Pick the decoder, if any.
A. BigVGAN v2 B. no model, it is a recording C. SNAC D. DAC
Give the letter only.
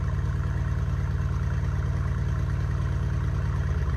B